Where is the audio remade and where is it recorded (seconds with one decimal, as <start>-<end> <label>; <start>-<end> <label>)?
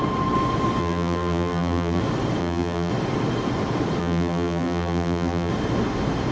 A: 0.0-0.8 recorded; 0.8-2.0 remade; 2.0-2.4 recorded; 2.4-2.9 remade; 2.9-4.0 recorded; 4.0-5.5 remade; 5.5-6.3 recorded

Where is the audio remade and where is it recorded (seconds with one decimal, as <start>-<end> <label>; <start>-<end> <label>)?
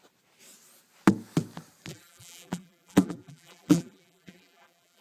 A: 0.0-1.9 recorded; 1.9-5.0 remade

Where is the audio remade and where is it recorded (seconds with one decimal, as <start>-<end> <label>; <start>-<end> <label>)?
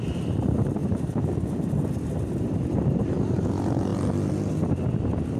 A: 0.0-0.8 recorded; 0.8-3.5 remade; 3.5-5.4 recorded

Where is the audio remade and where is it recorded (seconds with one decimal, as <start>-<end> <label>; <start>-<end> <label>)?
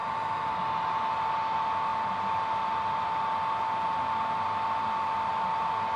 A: 0.0-0.5 remade; 0.5-1.9 recorded; 1.9-5.5 remade; 5.5-6.0 recorded